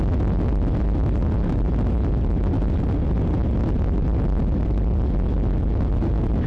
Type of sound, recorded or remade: recorded